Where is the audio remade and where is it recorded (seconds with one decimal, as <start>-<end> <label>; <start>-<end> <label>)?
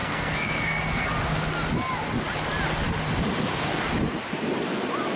0.0-1.1 remade; 1.1-5.2 recorded